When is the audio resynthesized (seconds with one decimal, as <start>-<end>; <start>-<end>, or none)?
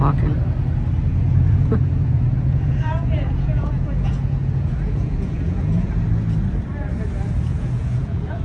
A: 1.1-5.9; 7.5-8.4